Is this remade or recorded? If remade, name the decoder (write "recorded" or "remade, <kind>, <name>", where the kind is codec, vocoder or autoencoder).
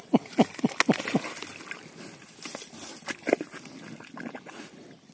recorded